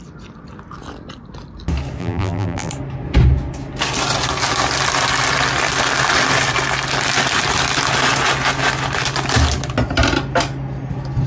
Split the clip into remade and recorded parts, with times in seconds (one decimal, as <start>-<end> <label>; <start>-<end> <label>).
0.0-2.0 recorded; 2.0-2.7 remade; 2.7-11.3 recorded